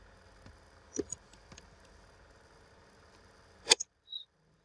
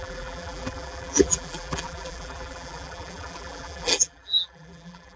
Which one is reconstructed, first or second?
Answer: second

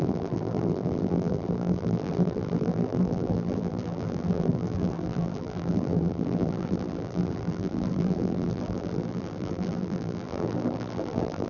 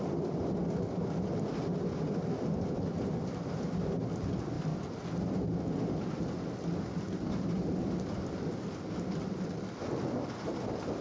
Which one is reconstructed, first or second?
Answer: first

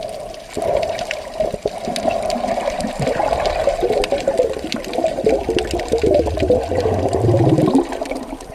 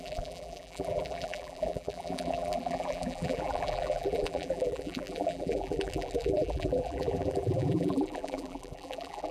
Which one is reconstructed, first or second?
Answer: second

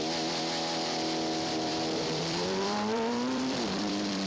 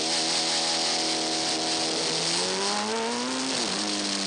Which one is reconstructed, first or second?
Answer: first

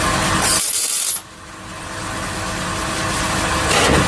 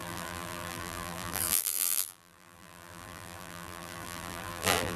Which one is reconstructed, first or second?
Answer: second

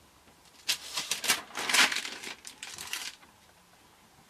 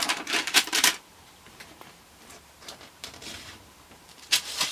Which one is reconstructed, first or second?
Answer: second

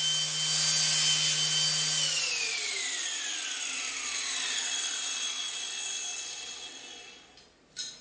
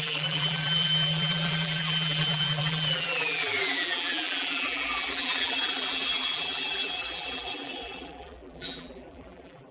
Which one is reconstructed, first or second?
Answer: second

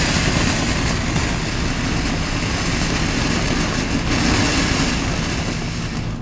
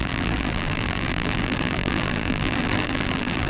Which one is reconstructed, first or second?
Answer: second